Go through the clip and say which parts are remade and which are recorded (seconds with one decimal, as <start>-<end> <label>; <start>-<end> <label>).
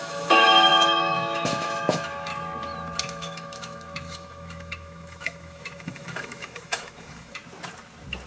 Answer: 0.0-2.3 remade; 2.3-3.0 recorded; 3.0-7.4 remade; 7.4-8.3 recorded